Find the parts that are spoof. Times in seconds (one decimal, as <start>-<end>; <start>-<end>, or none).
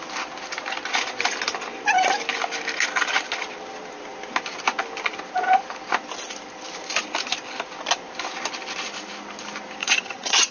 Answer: 9.8-10.5